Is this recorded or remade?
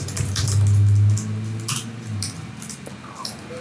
recorded